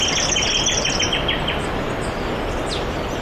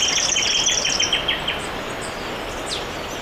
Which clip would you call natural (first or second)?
first